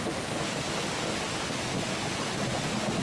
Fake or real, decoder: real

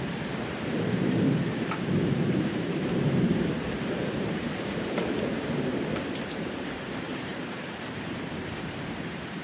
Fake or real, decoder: fake, vocoder, BigVGAN v2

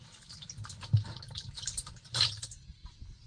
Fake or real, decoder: real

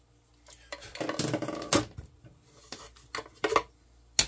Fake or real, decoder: real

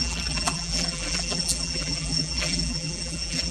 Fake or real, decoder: fake, vocoder, BigVGAN v2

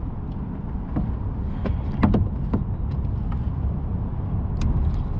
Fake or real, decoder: real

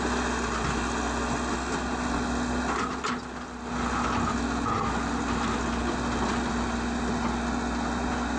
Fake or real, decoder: real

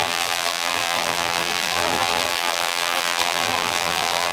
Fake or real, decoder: fake, vocoder, BigVGAN v2